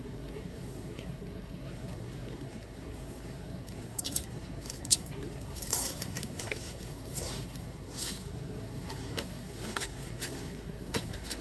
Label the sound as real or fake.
fake